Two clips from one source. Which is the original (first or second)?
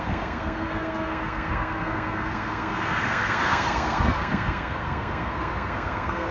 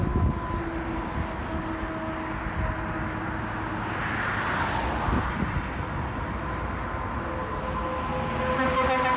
second